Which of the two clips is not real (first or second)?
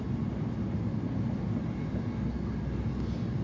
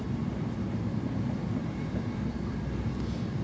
second